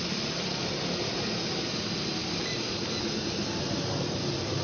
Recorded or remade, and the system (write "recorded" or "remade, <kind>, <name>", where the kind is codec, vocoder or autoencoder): remade, vocoder, BigVGAN v2